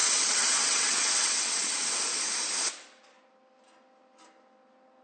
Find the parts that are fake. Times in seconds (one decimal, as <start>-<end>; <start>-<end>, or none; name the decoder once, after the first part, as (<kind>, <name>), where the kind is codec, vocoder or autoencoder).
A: 0.0-1.9 (vocoder, WaveNeXt)